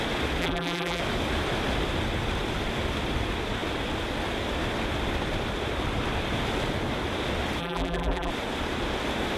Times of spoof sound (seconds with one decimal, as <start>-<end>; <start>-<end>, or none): 0.4-1.0; 7.6-8.3